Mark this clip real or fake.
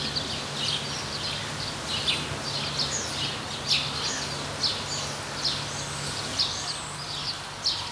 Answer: real